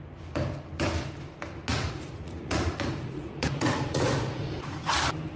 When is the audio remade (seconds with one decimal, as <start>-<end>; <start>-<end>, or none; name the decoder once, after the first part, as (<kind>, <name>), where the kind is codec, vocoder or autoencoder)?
1.7-4.9 (vocoder, Vocos)